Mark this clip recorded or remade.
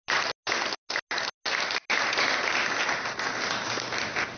recorded